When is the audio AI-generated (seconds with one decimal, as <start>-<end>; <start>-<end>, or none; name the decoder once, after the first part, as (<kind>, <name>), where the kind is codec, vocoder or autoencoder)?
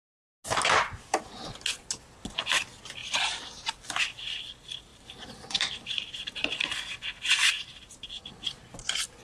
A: 3.0-3.9 (vocoder, BigVGAN v2); 4.9-7.8